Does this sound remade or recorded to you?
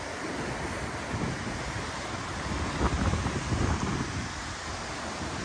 recorded